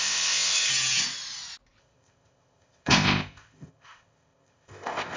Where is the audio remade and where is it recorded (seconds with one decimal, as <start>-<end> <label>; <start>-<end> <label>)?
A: 0.0-0.7 remade; 0.7-1.8 recorded; 1.8-5.2 remade